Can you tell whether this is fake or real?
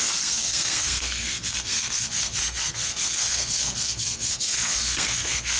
fake